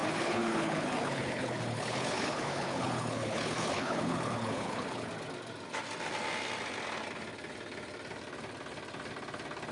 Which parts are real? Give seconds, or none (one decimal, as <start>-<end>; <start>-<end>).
5.1-9.7